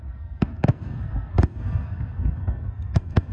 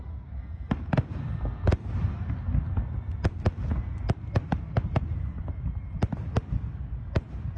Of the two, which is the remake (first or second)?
first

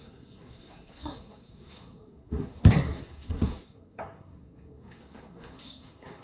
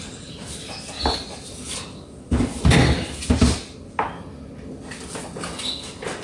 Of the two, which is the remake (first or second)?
first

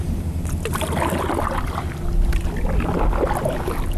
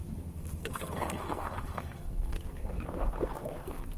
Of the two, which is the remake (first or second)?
second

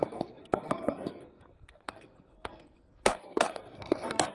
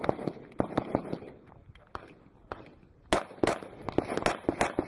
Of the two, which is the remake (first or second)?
first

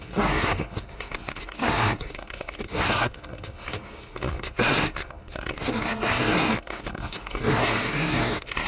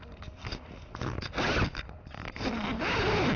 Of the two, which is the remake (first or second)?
first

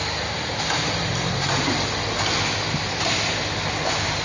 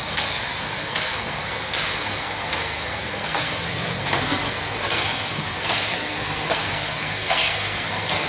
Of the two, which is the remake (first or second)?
second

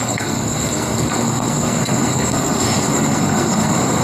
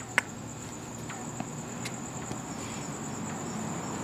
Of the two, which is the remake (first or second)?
first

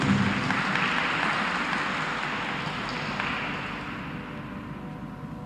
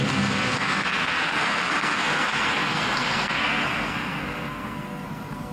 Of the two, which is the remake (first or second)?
second